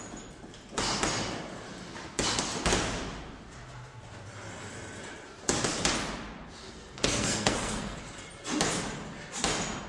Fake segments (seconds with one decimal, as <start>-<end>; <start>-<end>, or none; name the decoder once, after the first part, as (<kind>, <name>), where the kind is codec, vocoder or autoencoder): 6.6-8.0 (codec, SNAC)